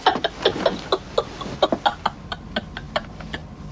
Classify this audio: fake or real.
real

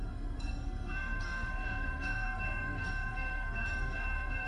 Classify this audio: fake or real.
fake